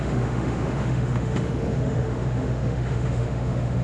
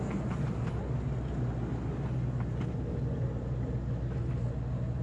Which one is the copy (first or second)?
first